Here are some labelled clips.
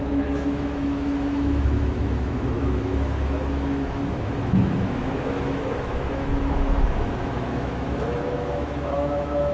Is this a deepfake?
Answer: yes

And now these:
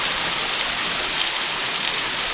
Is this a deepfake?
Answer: no